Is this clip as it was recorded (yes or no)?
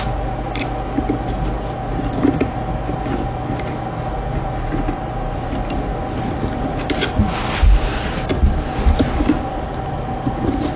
yes